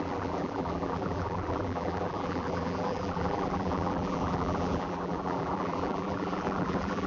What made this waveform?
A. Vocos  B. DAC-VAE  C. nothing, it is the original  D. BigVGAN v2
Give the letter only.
D